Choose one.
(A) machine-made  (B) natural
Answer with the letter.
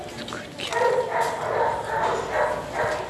B